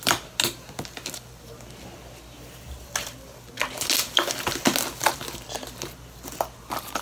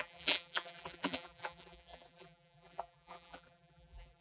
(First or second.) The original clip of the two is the first